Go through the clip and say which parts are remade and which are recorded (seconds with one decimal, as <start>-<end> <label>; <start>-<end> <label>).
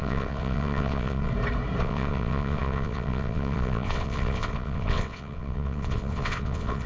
0.0-1.3 remade; 1.3-1.8 recorded; 1.8-6.9 remade